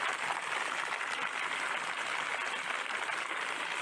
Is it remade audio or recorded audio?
recorded